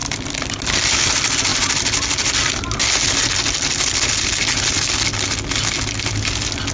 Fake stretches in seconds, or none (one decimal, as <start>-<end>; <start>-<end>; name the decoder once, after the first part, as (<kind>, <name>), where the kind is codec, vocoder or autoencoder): none